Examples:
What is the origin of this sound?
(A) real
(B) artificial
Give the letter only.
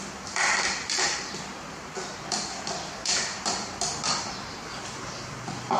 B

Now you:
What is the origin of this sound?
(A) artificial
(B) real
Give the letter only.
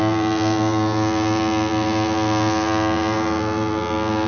A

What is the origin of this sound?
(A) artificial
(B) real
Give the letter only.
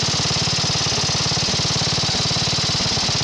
B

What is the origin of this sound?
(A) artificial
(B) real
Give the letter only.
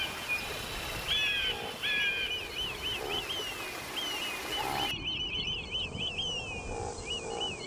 B